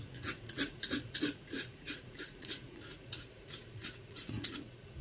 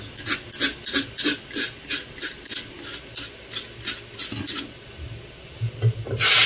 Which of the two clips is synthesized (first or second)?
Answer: first